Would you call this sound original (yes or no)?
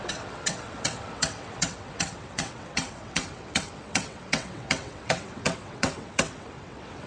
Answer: no